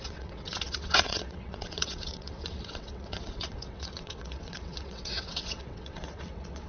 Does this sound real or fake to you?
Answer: fake